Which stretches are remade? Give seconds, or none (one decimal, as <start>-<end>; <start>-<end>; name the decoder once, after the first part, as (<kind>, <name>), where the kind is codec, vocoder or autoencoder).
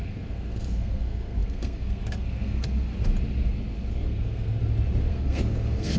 0.0-2.9 (codec, SNAC); 3.9-4.6; 5.1-6.0